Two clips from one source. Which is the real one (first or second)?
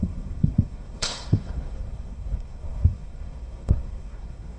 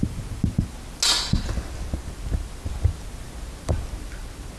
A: second